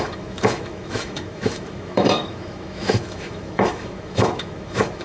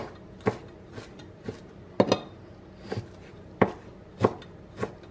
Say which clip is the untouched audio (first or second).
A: second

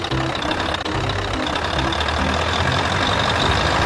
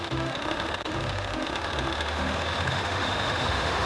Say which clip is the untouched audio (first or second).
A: first